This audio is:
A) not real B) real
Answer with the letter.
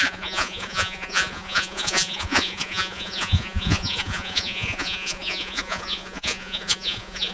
A